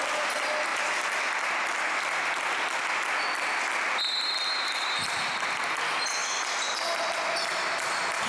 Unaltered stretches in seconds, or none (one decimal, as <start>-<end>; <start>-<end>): 0.0-0.7; 1.2-8.3